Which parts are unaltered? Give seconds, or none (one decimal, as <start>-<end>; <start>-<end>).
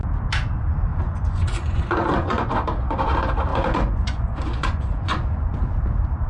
0.0-0.9; 2.5-3.5; 5.5-6.3